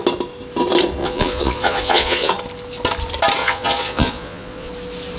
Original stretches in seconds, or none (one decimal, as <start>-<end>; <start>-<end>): 0.0-1.0; 2.3-3.4; 4.7-5.2